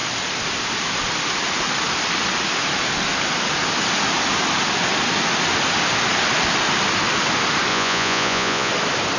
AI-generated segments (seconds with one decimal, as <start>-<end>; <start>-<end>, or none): 7.7-8.7